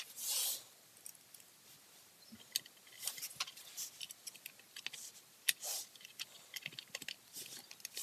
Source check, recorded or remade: recorded